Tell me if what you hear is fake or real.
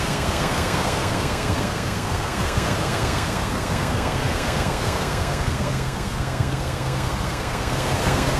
fake